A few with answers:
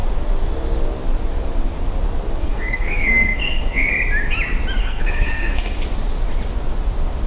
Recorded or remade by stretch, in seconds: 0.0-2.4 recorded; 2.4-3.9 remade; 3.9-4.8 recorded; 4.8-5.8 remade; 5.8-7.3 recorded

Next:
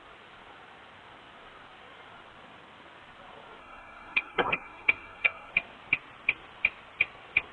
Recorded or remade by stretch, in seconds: 0.0-3.6 recorded; 3.6-5.5 remade; 5.5-7.5 recorded